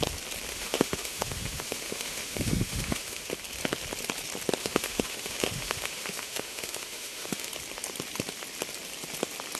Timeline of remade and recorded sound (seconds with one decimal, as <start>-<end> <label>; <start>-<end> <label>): 0.0-0.5 recorded; 0.5-3.3 remade; 3.3-4.6 recorded; 4.6-7.5 remade; 7.5-9.6 recorded